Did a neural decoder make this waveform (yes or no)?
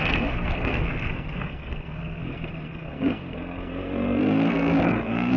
yes